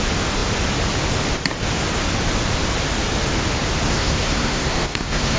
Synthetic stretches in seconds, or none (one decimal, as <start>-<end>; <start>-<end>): 3.9-5.4